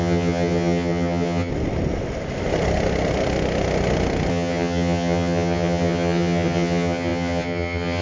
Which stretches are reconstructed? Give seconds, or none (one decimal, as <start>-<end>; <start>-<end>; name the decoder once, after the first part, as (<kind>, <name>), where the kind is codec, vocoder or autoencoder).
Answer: 0.0-1.5 (vocoder, HiFi-GAN); 4.3-8.0